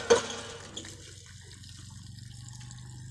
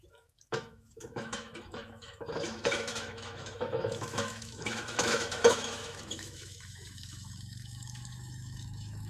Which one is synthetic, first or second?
second